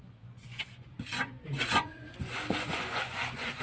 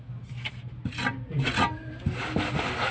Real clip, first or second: second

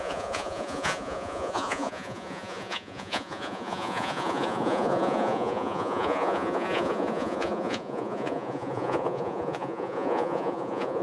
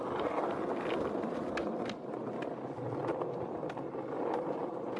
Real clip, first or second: second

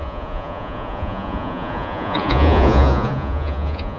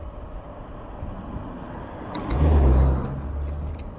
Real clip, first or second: second